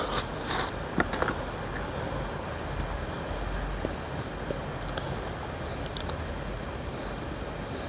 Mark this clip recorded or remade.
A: recorded